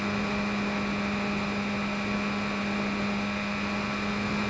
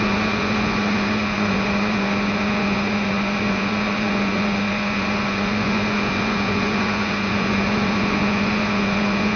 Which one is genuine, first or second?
first